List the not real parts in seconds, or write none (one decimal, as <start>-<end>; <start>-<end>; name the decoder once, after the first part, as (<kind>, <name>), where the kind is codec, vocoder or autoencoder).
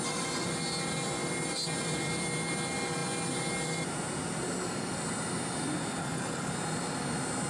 6.0-6.5 (codec, HILCodec)